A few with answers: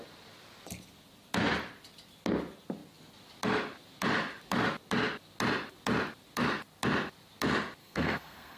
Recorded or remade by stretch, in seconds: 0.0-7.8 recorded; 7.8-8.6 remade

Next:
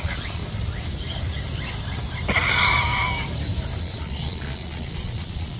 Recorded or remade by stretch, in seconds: 0.0-0.4 remade; 0.4-3.8 recorded; 3.8-5.6 remade

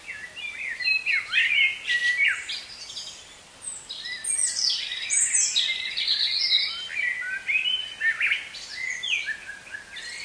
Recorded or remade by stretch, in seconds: 0.0-10.2 recorded

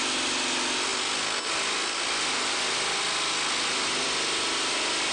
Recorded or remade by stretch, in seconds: 0.0-5.1 recorded

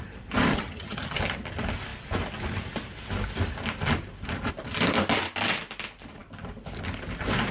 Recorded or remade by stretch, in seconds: 0.0-0.5 recorded; 0.5-1.2 remade; 1.2-7.5 recorded

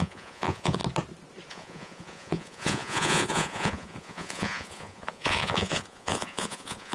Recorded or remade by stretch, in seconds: 0.0-0.8 remade; 0.8-1.5 recorded; 1.5-6.9 remade

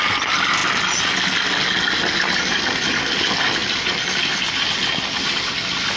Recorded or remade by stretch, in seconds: 0.0-6.0 recorded